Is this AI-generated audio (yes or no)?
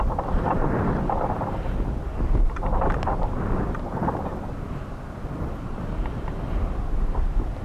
yes